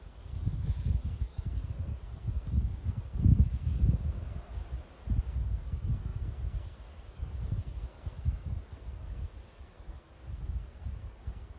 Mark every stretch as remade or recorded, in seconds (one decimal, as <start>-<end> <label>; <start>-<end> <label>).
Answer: 0.0-4.6 remade; 4.6-5.2 recorded; 5.2-11.6 remade